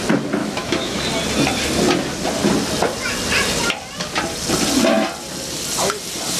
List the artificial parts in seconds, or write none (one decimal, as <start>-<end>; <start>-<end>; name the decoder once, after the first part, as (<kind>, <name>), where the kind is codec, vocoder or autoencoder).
0.4-1.0 (autoencoder, DAC-VAE)